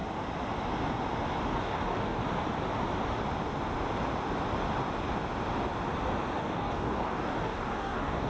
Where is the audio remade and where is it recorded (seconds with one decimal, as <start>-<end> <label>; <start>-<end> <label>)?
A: 0.0-1.6 recorded; 1.6-2.2 remade; 2.2-6.4 recorded; 6.4-8.3 remade